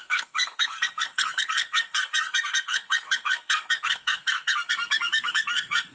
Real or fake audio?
fake